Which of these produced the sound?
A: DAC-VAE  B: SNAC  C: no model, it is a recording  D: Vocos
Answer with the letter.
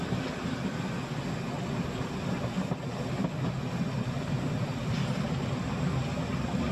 C